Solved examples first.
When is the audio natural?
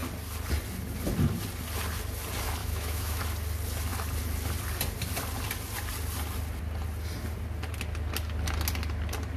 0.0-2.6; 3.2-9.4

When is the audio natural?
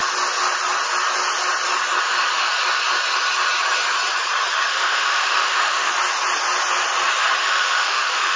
0.0-4.7; 5.9-7.4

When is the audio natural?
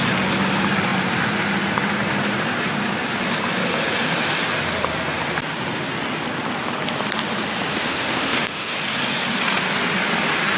0.0-7.7; 8.7-10.6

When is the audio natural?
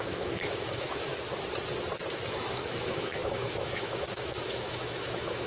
1.1-2.1